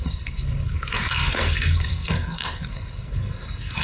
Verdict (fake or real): fake